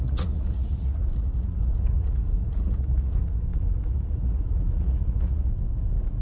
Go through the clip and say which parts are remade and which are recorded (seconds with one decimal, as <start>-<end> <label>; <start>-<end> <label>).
0.0-5.5 remade; 5.5-6.2 recorded